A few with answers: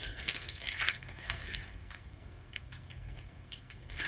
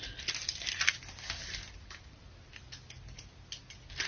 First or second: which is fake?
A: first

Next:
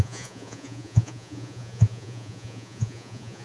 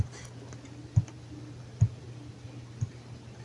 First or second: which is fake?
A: first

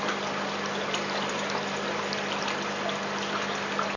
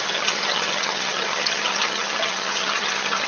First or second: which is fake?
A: second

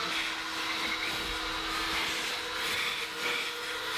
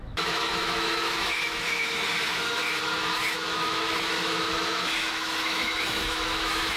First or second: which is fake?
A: second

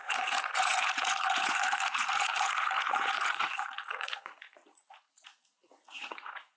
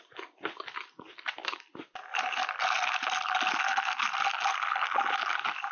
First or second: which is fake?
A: first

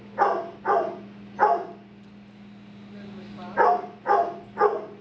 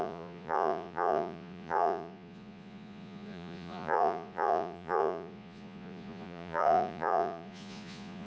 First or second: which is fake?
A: second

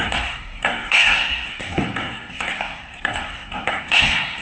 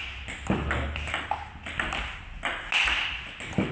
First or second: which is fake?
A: first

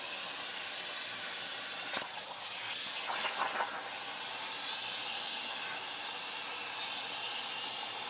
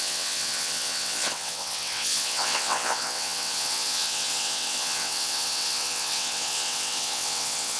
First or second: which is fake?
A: second